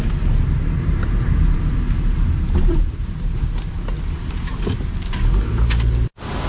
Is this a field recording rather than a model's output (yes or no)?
yes